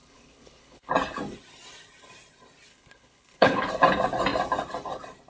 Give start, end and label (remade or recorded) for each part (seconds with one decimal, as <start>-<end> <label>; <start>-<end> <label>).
0.0-0.9 remade; 0.9-2.7 recorded; 2.7-3.7 remade; 3.7-5.3 recorded